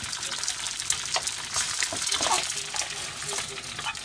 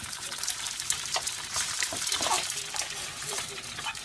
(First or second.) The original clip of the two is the first